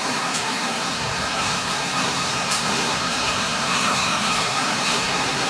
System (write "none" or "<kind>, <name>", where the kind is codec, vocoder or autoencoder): codec, SNAC